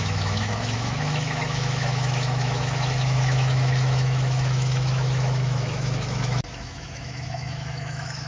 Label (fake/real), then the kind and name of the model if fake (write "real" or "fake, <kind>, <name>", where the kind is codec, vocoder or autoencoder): fake, autoencoder, DAC-VAE